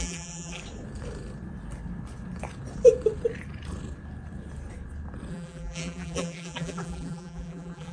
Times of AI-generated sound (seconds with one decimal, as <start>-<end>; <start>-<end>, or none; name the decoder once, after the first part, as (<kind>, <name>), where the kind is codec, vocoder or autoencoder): 0.0-0.6 (vocoder, BigVGAN v2); 5.3-7.9